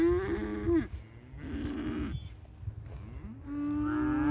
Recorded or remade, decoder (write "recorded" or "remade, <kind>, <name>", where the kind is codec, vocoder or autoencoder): recorded